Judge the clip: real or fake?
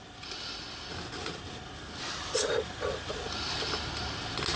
real